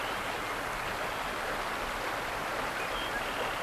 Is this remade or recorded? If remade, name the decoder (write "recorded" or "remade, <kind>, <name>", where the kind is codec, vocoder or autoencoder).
recorded